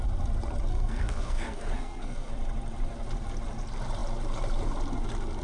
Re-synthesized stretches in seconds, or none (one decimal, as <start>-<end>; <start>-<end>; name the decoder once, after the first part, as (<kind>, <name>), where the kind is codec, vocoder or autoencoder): 0.7-2.3 (codec, SNAC)